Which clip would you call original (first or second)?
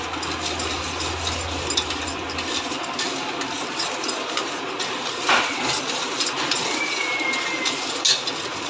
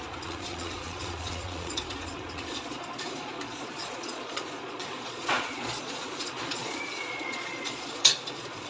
first